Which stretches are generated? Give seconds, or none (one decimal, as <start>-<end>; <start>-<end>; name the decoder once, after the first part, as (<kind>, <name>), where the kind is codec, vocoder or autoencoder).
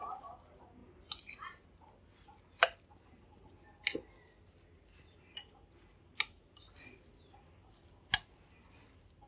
none